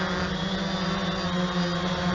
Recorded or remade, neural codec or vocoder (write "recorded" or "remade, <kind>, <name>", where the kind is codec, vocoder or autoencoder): recorded